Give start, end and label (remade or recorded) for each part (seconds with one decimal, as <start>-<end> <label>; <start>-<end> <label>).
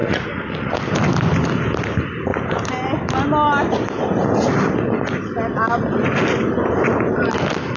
0.0-0.7 remade; 0.7-7.8 recorded